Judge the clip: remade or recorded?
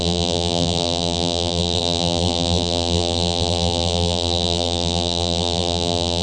remade